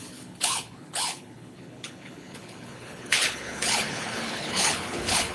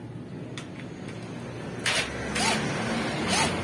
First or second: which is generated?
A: first